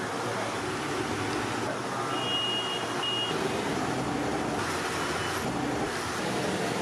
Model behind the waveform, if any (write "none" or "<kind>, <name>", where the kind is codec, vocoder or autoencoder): none